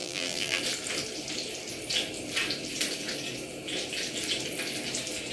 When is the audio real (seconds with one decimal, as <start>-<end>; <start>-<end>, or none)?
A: 0.6-5.3